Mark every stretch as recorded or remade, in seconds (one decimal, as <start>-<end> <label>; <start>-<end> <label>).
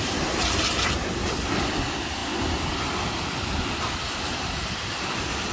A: 0.0-5.5 recorded